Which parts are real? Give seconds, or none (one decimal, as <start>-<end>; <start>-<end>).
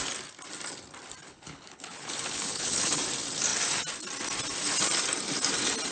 0.0-1.2; 3.0-5.9